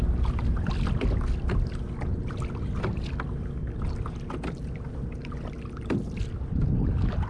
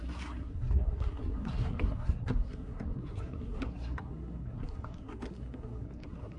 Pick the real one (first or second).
first